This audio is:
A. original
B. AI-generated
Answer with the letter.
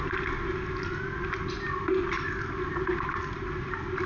A